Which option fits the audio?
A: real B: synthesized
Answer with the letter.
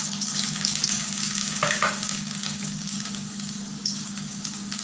B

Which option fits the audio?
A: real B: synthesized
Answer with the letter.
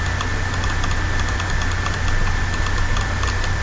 A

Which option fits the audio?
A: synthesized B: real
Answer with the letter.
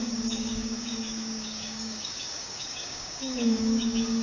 A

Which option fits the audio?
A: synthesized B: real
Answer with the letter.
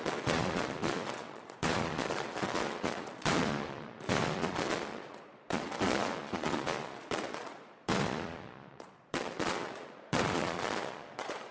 A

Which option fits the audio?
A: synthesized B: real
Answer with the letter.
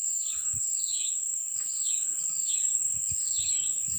A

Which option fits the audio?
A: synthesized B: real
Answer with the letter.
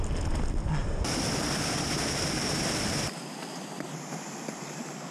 B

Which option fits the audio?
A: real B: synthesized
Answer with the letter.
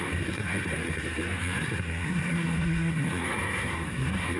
B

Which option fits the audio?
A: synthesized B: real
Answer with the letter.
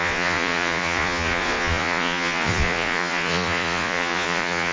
A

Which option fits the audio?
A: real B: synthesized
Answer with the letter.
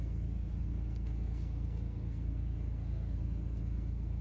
B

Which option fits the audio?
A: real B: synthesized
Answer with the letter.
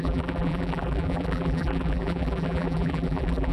B